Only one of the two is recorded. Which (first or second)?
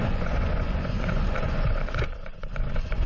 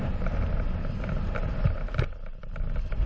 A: second